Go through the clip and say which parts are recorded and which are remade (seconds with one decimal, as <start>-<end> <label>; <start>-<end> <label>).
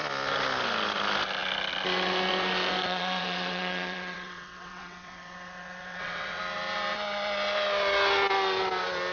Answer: 0.0-2.8 recorded; 2.8-6.4 remade; 6.4-9.1 recorded